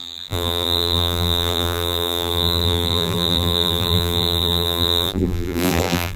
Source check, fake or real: fake